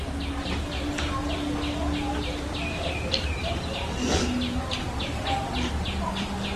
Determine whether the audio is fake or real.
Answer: real